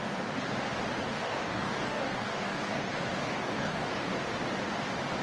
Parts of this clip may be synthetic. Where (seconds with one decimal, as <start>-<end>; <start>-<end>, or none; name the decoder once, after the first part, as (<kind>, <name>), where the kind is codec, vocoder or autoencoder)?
1.0-4.1 (codec, DAC)